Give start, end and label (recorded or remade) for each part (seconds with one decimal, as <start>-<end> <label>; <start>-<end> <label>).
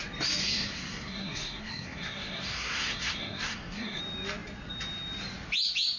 0.0-0.4 recorded; 0.4-4.0 remade; 4.0-6.0 recorded